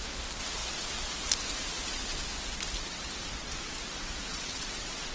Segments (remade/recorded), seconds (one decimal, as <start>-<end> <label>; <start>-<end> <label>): 0.0-4.3 recorded; 4.3-5.1 remade